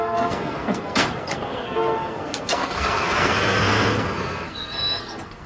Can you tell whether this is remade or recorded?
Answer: remade